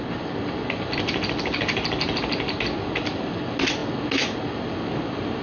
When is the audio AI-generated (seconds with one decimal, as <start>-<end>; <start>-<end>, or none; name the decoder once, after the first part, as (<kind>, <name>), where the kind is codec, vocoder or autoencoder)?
none